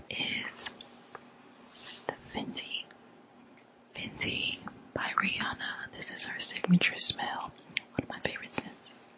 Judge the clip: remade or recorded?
recorded